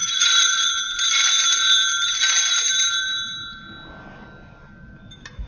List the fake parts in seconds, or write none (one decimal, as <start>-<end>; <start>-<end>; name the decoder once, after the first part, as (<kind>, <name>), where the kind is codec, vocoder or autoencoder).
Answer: 0.0-0.7 (vocoder, Vocos)